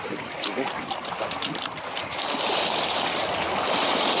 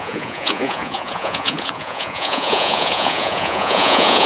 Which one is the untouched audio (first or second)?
first